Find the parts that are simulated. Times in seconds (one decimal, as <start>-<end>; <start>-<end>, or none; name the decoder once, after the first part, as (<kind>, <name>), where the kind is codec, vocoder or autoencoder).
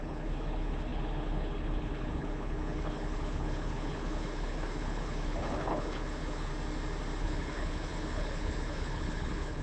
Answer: 0.0-6.5 (codec, HILCodec); 7.2-9.6